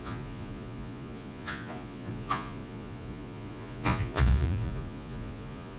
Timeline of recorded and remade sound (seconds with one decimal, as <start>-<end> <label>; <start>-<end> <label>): 0.0-5.8 remade